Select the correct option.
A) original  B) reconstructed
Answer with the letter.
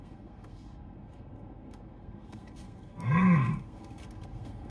B